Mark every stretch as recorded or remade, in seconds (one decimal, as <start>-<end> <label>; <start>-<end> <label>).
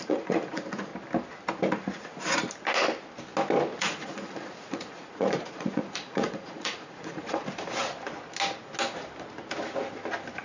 0.0-0.9 remade; 0.9-1.7 recorded; 1.7-2.4 remade; 2.4-3.8 recorded; 3.8-7.4 remade; 7.4-10.4 recorded